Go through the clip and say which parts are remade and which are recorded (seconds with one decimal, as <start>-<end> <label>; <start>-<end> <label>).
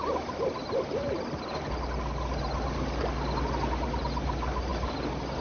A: 0.0-0.6 recorded; 0.6-1.2 remade; 1.2-5.4 recorded